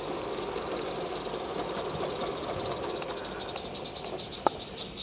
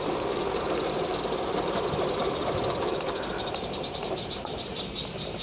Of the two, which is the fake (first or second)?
second